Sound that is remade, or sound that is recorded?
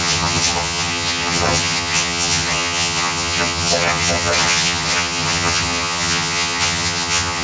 remade